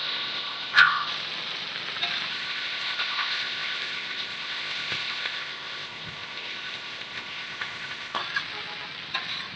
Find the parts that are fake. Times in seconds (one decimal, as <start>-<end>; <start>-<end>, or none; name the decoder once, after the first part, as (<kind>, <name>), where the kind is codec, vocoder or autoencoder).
0.0-1.1 (codec, ZipCodec); 2.3-8.2